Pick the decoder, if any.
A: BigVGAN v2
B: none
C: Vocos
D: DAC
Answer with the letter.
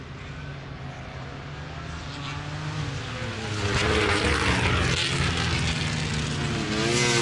B